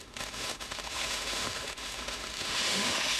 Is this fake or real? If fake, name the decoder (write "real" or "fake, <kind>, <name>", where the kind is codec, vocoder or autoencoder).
fake, autoencoder, DAC-VAE